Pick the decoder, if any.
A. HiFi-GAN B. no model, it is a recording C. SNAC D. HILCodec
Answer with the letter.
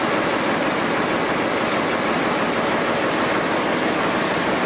B